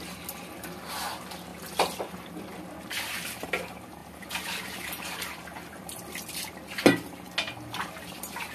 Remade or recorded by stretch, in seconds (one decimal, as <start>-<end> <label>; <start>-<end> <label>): 0.0-8.5 recorded